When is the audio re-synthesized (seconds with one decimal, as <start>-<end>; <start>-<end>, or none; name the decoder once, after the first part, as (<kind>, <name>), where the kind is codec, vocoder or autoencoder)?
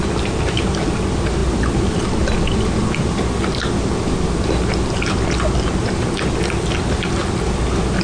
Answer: none